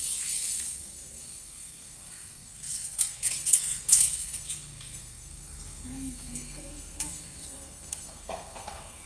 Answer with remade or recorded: remade